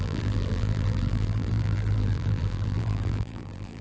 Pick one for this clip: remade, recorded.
remade